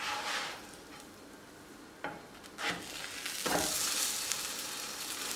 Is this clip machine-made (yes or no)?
no